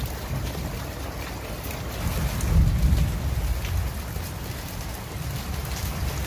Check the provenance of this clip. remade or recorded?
recorded